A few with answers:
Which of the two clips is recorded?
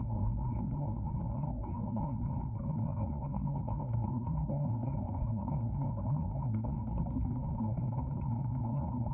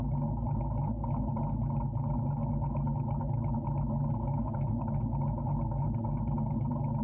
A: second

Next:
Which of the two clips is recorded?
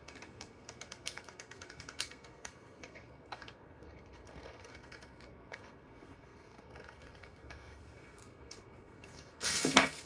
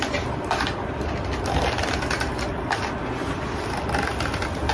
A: second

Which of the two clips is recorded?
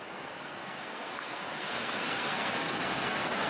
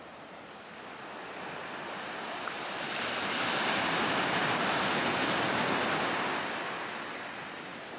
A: second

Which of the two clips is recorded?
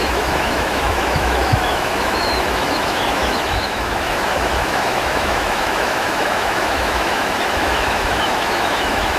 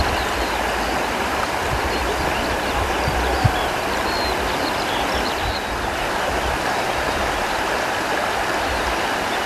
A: second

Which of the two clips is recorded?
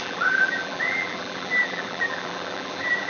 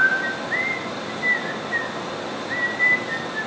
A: second